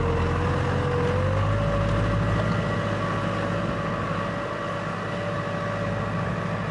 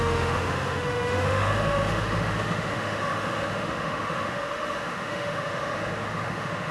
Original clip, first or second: first